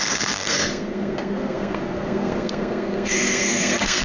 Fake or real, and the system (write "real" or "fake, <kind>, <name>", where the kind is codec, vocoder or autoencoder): fake, codec, SNAC